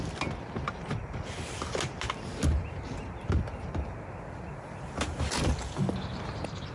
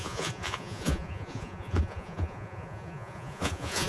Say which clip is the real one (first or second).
first